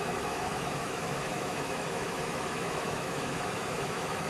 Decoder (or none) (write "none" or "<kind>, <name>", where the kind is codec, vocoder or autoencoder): autoencoder, DAC-VAE